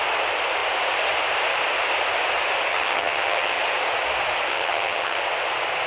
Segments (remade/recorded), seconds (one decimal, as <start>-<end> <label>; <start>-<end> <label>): 0.0-2.7 recorded; 2.7-3.6 remade; 3.6-4.5 recorded; 4.5-5.2 remade; 5.2-5.9 recorded